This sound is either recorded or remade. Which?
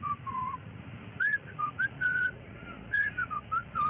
remade